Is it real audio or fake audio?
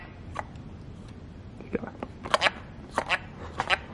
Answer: real